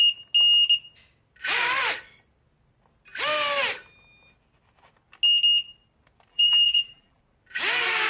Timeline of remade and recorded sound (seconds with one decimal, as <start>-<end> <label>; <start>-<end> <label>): 0.0-6.3 recorded; 6.3-7.2 remade; 7.2-8.1 recorded